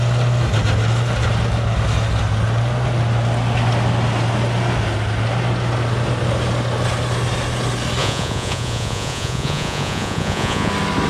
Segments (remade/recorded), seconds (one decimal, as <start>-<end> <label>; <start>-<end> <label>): 0.0-8.0 recorded; 8.0-10.7 remade; 10.7-11.1 recorded